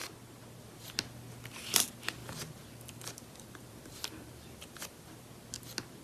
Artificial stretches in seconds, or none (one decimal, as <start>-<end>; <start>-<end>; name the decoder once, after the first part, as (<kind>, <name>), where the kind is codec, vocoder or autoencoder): 2.2-5.3 (vocoder, BigVGAN v2)